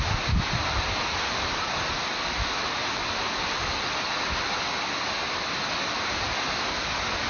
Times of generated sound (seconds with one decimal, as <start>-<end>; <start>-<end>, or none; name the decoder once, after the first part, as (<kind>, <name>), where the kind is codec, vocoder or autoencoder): none